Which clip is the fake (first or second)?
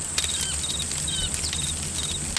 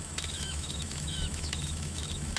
second